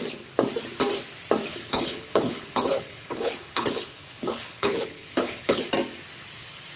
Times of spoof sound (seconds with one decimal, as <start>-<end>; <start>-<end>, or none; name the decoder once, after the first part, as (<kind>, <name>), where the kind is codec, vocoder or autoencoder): 1.5-5.6 (codec, HILCodec)